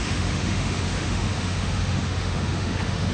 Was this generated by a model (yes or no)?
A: yes